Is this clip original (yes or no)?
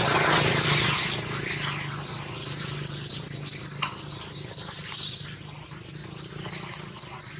yes